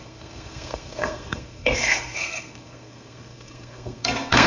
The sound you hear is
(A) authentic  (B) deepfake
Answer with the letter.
B